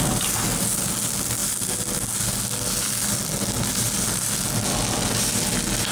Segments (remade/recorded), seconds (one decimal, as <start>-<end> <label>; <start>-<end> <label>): 0.0-5.9 recorded